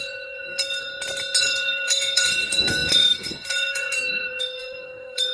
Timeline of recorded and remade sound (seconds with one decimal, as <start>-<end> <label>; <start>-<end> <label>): 0.0-0.9 remade; 0.9-1.4 recorded; 1.4-5.3 remade